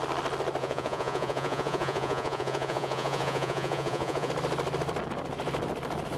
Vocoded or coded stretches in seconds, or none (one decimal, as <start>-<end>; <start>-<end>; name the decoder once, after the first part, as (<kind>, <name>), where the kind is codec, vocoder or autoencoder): 0.6-4.3 (vocoder, Vocos)